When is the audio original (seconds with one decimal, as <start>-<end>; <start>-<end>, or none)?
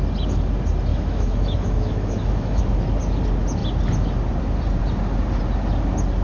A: 0.0-0.9; 2.6-6.2